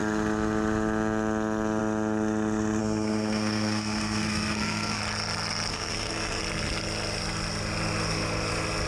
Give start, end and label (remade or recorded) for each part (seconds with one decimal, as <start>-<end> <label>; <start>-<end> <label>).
0.0-2.8 recorded; 2.8-5.0 remade; 5.0-5.7 recorded; 5.7-6.4 remade; 6.4-8.9 recorded